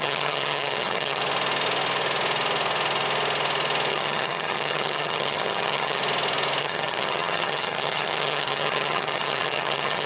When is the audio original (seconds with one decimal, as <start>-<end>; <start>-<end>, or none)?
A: 1.2-3.9; 6.0-6.6